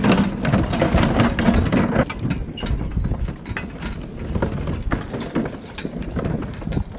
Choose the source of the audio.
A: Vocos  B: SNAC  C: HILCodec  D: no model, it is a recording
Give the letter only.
D